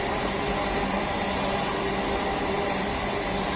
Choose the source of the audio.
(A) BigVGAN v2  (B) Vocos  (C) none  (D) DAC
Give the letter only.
C